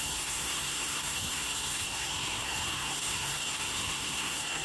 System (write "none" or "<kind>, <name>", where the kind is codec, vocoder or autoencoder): codec, SNAC